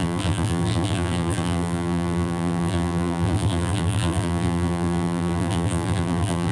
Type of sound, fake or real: fake